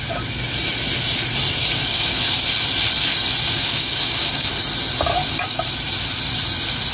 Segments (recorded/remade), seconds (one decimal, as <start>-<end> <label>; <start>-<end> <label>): 0.0-1.6 recorded; 1.6-2.5 remade; 2.5-3.4 recorded; 3.4-4.5 remade; 4.5-6.9 recorded

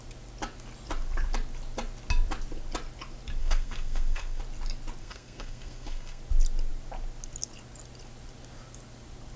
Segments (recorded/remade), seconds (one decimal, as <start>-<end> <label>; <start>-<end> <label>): 0.0-3.4 recorded; 3.4-4.4 remade; 4.4-5.0 recorded; 5.0-6.2 remade; 6.2-9.4 recorded

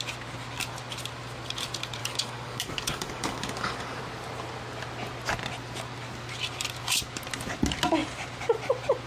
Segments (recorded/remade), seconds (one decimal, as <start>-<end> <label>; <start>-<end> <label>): 0.0-2.0 recorded; 2.0-4.0 remade; 4.0-9.1 recorded

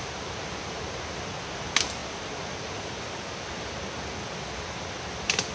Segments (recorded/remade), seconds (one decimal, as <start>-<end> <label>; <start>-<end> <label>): 0.0-5.5 recorded

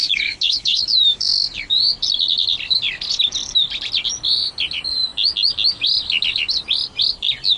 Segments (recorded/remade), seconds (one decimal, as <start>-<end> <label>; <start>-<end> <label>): 0.0-1.3 remade; 1.3-7.6 recorded